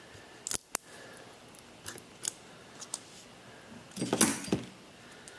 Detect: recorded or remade recorded